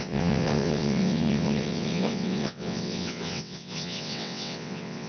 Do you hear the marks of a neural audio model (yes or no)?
yes